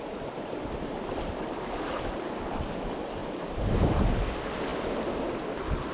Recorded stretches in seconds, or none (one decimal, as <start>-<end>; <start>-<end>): 0.0-3.2; 3.9-5.9